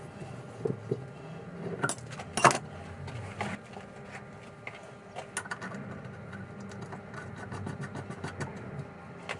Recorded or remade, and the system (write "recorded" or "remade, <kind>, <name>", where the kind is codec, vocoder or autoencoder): recorded